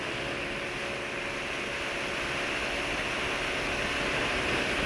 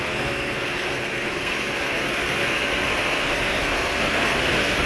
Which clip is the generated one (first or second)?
second